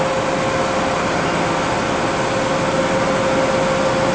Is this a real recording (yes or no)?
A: yes